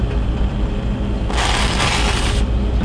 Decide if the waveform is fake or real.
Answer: real